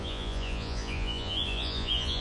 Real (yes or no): no